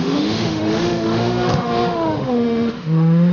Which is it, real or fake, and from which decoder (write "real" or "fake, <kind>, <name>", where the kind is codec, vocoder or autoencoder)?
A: fake, autoencoder, DAC-VAE